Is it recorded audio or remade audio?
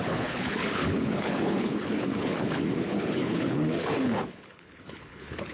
remade